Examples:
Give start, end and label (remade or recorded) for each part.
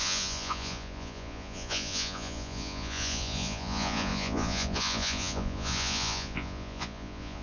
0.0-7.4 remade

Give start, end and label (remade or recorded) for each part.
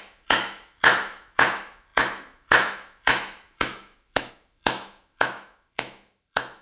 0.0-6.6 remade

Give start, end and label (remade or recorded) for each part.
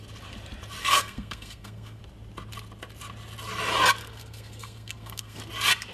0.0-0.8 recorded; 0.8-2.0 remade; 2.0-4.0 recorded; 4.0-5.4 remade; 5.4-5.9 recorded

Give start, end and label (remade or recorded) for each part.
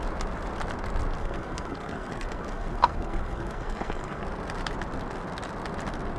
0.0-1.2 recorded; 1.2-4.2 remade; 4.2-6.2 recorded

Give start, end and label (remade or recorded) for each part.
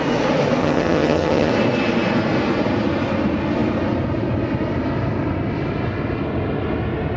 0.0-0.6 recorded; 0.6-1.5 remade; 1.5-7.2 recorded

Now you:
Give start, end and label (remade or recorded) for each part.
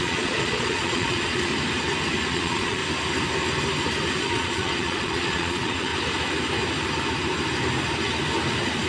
0.0-1.5 remade; 1.5-2.3 recorded; 2.3-2.8 remade; 2.8-4.2 recorded; 4.2-5.9 remade; 5.9-8.9 recorded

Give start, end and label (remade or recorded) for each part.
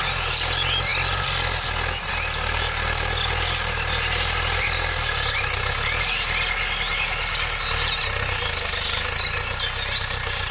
0.0-10.5 recorded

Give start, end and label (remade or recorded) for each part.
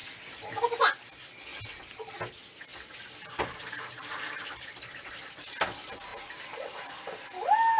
0.0-1.5 recorded; 1.5-2.1 remade; 2.1-2.7 recorded; 2.7-5.5 remade; 5.5-6.1 recorded; 6.1-7.0 remade; 7.0-7.8 recorded